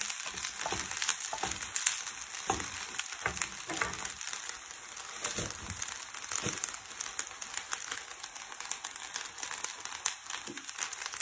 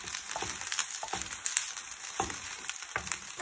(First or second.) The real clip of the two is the first